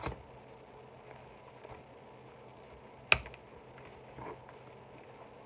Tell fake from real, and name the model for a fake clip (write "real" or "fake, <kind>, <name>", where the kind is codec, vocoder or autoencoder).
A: real